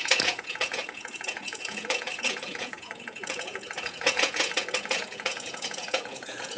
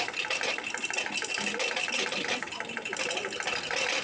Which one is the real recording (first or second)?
second